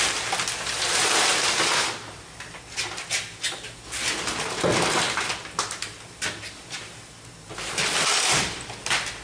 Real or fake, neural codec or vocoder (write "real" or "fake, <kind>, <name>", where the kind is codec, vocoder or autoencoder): real